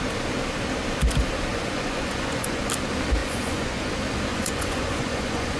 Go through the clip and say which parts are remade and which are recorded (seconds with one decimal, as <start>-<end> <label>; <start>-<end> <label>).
0.0-1.5 recorded; 1.5-2.6 remade; 2.6-3.2 recorded; 3.2-3.9 remade; 3.9-4.3 recorded; 4.3-5.6 remade